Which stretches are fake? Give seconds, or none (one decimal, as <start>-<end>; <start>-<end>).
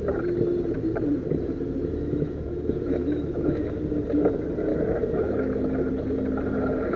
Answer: 1.8-3.8; 4.7-5.9